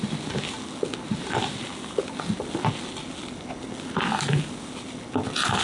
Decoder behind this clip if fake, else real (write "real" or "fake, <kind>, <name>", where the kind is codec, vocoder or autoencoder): real